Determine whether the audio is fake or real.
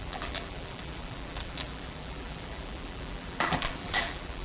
fake